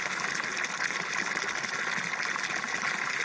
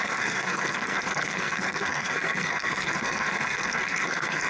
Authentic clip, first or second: first